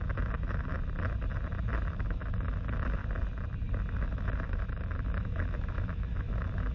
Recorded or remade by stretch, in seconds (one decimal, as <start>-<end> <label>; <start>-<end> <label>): 0.0-0.7 remade; 0.7-1.9 recorded; 1.9-3.0 remade; 3.0-4.0 recorded; 4.0-6.7 remade